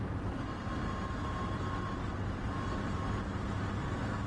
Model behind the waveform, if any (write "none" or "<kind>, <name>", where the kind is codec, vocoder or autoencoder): none